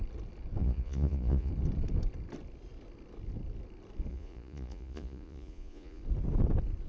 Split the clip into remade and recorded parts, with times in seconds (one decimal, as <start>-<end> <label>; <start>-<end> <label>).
0.0-0.6 recorded; 0.6-1.5 remade; 1.5-4.1 recorded; 4.1-6.0 remade; 6.0-6.9 recorded